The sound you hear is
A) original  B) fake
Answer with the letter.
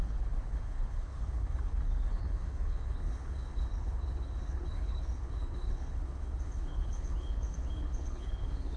B